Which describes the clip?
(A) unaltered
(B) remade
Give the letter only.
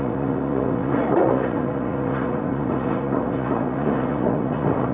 B